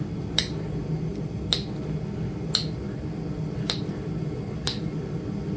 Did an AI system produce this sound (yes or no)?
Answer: no